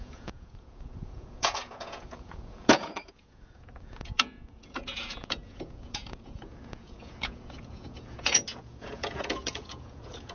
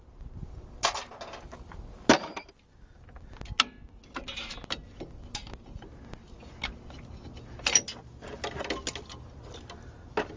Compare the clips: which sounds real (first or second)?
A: second